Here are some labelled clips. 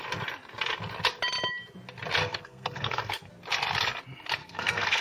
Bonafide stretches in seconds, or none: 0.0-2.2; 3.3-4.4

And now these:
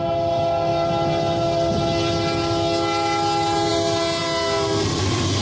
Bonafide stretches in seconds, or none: 0.0-5.4

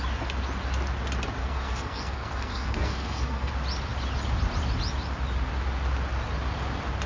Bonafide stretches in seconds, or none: 0.0-1.4; 3.5-7.1

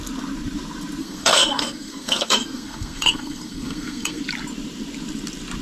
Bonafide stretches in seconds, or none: 0.0-1.0; 4.2-5.6

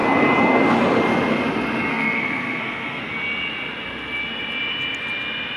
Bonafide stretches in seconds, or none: 0.0-1.9; 3.0-5.6

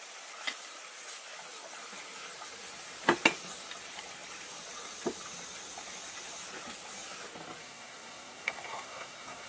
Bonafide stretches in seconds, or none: 0.0-7.6

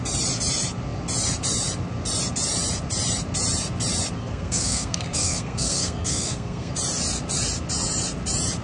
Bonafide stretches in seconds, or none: 0.0-4.2; 6.7-8.6

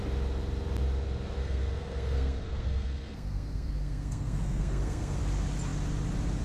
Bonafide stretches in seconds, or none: 0.0-1.4; 5.2-6.4